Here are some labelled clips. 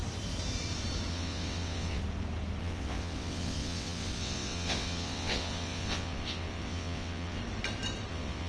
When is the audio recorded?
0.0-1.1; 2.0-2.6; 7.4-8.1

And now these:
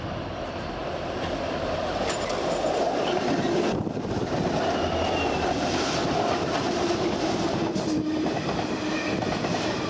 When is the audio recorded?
0.8-1.4

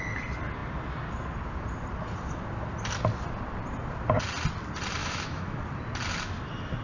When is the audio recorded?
0.0-5.0; 5.6-6.8

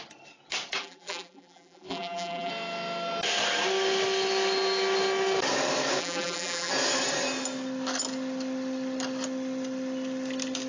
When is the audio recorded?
0.0-0.8; 2.5-6.0; 6.7-10.7

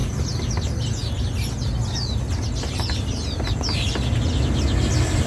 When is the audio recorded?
0.5-5.3